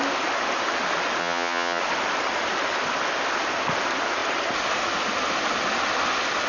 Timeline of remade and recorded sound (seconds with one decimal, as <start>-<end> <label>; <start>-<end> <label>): 0.0-1.2 recorded; 1.2-1.8 remade; 1.8-6.5 recorded